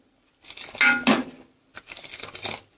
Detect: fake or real real